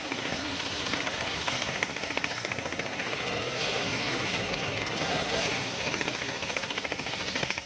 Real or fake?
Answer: fake